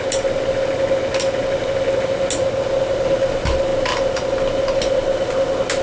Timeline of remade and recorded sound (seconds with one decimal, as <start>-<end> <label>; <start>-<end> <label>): 0.0-5.8 recorded